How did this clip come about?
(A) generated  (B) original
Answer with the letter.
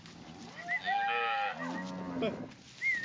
B